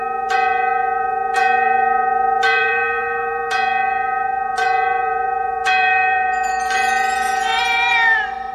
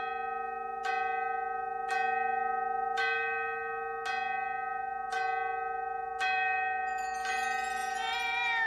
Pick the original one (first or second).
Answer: second